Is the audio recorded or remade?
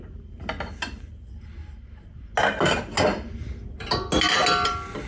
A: recorded